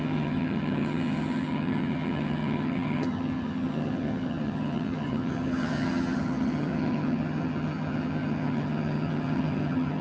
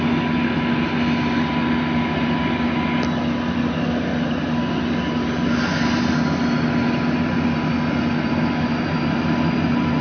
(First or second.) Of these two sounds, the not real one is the first